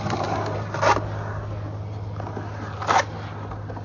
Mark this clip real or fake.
real